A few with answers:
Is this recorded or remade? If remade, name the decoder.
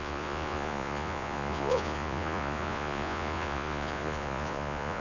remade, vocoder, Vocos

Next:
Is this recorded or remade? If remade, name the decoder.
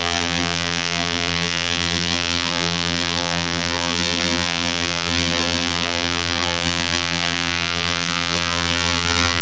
remade, vocoder, BigVGAN v2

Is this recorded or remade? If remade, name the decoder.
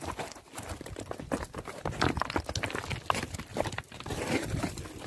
recorded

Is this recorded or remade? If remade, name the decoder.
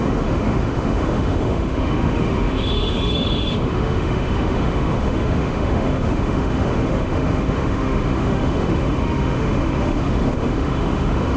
remade, autoencoder, DAC-VAE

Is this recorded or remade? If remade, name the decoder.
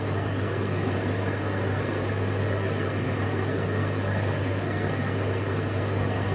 remade, codec, SNAC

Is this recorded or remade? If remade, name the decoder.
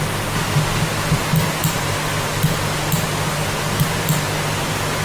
recorded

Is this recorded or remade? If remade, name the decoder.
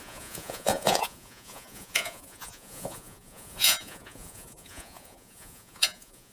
remade, vocoder, Vocos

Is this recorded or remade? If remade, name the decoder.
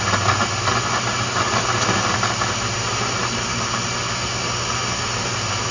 recorded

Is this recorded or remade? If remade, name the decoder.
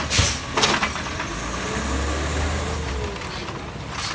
recorded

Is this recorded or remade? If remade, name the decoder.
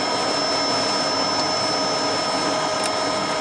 recorded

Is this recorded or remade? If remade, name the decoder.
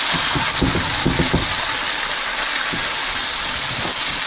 remade, vocoder, BigVGAN v2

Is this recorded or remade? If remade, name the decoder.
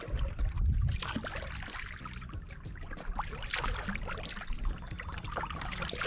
recorded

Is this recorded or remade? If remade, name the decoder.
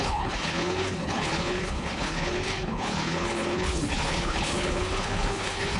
remade, codec, HILCodec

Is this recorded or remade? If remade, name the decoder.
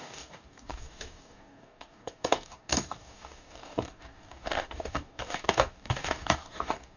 remade, codec, DAC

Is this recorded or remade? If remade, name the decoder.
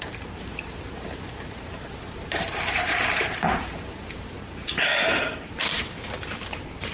remade, vocoder, BigVGAN v2